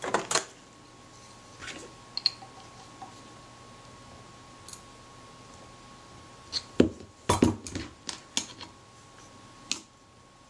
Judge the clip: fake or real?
real